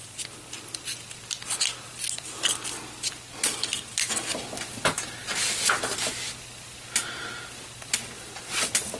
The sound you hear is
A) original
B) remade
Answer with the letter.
A